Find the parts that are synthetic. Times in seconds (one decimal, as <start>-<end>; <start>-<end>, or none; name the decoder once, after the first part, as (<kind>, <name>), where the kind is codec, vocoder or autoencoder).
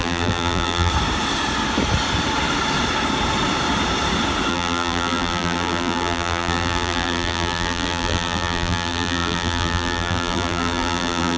0.0-0.9 (vocoder, BigVGAN v2); 4.5-11.4